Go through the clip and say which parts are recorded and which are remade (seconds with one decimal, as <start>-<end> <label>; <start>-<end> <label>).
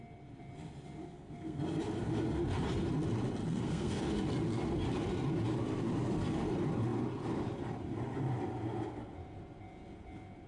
0.0-1.1 recorded; 1.1-1.6 remade; 1.6-3.5 recorded; 3.5-4.0 remade; 4.0-10.5 recorded